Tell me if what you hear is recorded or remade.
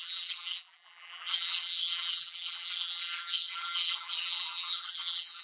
remade